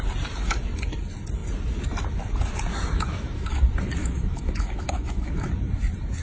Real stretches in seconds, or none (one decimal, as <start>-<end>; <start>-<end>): 0.0-2.7; 3.6-4.0; 5.5-6.2